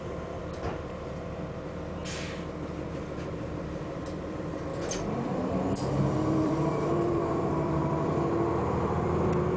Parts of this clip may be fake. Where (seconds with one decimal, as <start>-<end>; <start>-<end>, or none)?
0.0-2.0; 3.0-4.7; 6.0-9.6